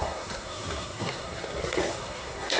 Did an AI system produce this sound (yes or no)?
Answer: yes